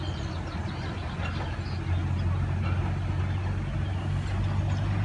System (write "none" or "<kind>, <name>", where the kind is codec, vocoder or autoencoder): none